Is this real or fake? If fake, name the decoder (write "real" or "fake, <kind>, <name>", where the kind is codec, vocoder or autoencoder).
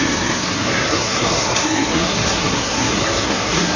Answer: fake, codec, SNAC